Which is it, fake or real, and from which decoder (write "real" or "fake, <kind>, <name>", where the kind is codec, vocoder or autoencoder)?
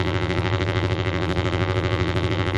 fake, vocoder, BigVGAN v2